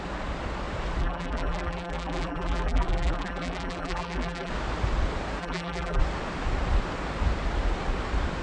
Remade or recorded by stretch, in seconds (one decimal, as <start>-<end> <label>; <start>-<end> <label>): 0.0-1.0 recorded; 1.0-4.5 remade; 4.5-5.4 recorded; 5.4-6.0 remade; 6.0-8.4 recorded